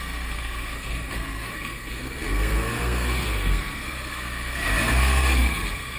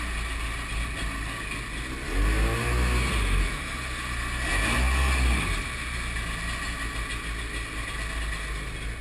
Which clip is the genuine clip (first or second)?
second